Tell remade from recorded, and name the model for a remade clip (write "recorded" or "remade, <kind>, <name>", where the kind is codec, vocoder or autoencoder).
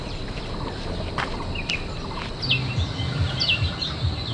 recorded